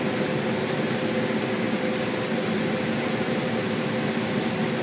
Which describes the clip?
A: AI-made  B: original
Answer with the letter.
B